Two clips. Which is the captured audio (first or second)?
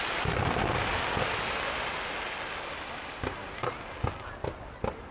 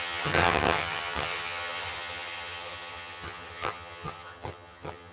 first